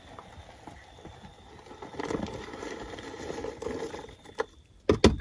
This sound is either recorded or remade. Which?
recorded